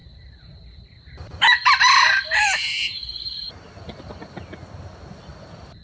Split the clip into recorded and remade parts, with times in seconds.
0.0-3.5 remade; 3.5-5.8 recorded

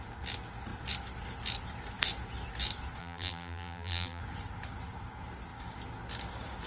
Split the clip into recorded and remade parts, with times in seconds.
0.0-3.0 recorded; 3.0-4.2 remade; 4.2-6.7 recorded

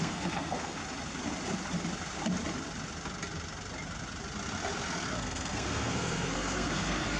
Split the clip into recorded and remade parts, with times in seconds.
0.0-0.8 remade; 0.8-5.1 recorded; 5.1-7.2 remade

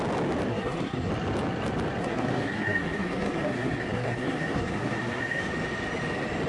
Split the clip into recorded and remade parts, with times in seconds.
0.0-0.5 recorded; 0.5-1.1 remade; 1.1-2.0 recorded; 2.0-5.4 remade; 5.4-6.5 recorded

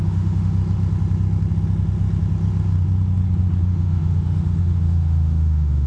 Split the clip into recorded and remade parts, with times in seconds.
0.0-0.6 remade; 0.6-3.6 recorded; 3.6-5.9 remade

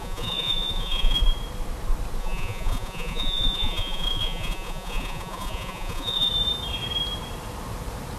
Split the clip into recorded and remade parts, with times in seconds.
0.0-1.2 remade; 1.2-2.2 recorded; 2.2-6.3 remade; 6.3-8.2 recorded

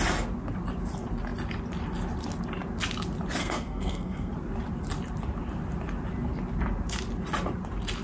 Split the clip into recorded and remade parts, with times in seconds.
0.0-3.4 recorded; 3.4-4.3 remade; 4.3-8.0 recorded